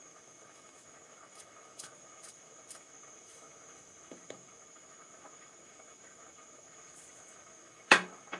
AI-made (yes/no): yes